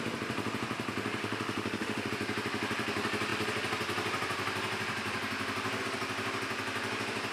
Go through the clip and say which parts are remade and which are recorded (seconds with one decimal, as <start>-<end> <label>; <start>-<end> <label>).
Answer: 0.0-1.2 recorded; 1.2-2.1 remade; 2.1-7.3 recorded